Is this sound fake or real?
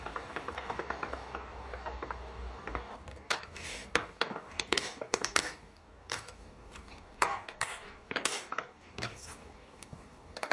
fake